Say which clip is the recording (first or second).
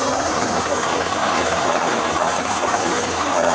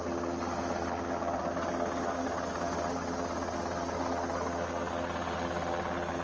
second